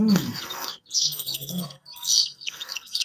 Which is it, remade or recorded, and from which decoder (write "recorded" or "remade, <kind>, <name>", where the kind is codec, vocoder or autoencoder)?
remade, codec, SNAC